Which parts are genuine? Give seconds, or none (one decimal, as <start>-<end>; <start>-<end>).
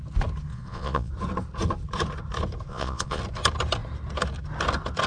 0.0-0.5; 1.1-2.7; 3.2-5.1